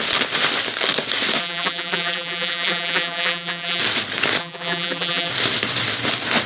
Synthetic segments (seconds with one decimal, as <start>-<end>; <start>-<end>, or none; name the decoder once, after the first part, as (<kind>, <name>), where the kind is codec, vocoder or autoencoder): 1.4-3.8 (vocoder, BigVGAN v2); 4.4-5.3